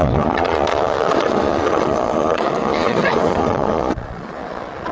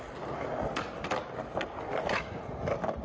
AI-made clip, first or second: first